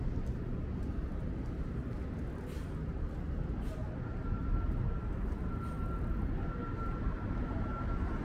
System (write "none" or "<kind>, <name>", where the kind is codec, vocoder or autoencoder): none